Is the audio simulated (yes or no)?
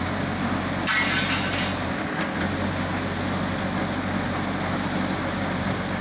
no